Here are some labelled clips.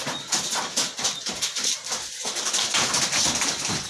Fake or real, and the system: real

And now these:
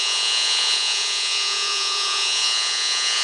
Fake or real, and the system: fake, vocoder, Vocos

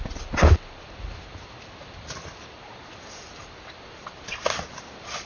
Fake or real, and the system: real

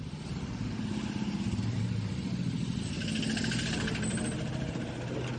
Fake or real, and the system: real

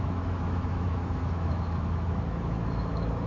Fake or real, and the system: fake, autoencoder, DAC-VAE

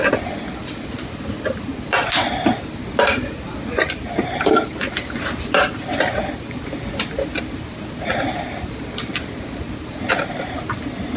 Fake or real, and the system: real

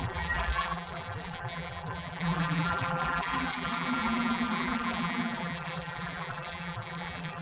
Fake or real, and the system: fake, vocoder, BigVGAN v2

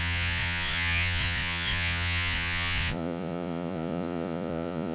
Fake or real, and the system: fake, vocoder, Vocos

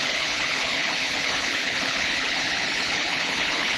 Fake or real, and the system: fake, codec, HILCodec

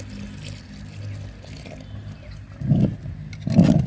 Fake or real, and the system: real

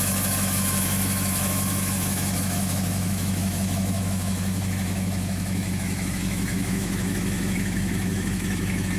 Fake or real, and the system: fake, autoencoder, DAC-VAE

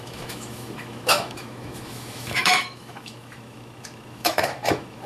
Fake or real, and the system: fake, autoencoder, DAC-VAE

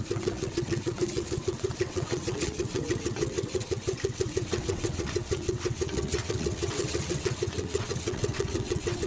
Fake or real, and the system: fake, vocoder, WaveNeXt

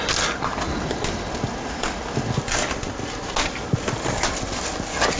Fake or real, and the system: real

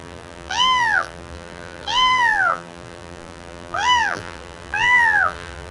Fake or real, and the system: fake, vocoder, BigVGAN v2